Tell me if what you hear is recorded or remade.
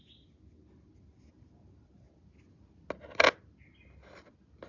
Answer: recorded